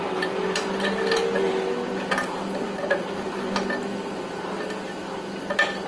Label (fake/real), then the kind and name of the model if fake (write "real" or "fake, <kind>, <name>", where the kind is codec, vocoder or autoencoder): real